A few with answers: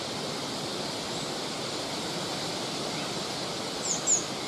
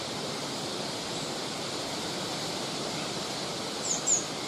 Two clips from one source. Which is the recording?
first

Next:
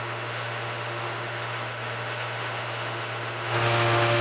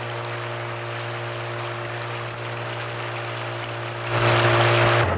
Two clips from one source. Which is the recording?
second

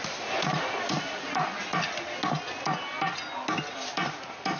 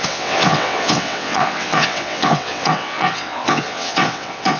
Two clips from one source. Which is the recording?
first